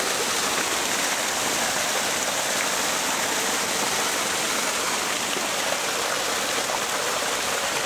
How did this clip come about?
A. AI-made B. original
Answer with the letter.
A